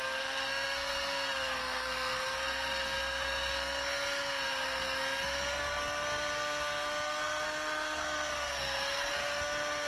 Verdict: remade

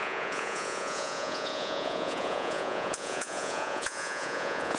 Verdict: remade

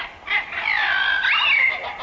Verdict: recorded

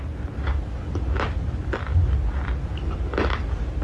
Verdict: recorded